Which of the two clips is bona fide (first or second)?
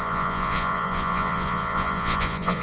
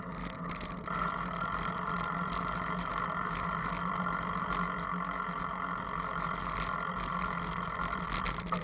second